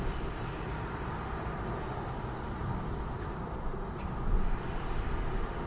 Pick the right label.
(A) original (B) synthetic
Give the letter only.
A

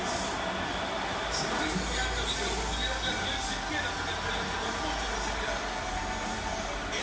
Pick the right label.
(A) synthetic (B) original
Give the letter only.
B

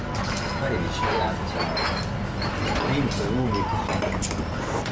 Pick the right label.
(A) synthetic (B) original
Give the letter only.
B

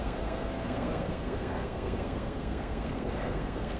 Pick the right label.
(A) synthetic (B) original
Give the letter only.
A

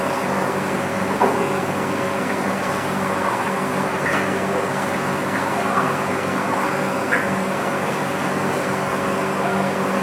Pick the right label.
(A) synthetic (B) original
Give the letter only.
A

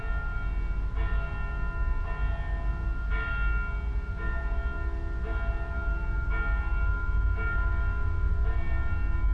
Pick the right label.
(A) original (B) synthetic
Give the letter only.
A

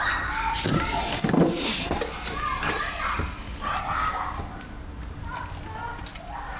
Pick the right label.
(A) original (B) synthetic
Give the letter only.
A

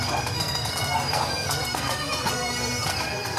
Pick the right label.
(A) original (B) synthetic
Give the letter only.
B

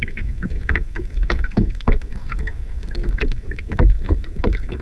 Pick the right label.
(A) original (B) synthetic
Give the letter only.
B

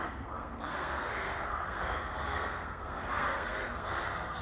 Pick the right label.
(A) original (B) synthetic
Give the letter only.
B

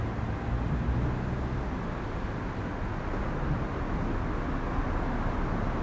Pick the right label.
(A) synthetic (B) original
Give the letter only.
B